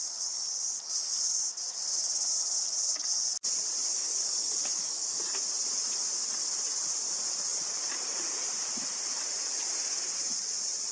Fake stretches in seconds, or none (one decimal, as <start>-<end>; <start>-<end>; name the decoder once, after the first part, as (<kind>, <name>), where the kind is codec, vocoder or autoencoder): 3.9-5.2 (codec, DAC)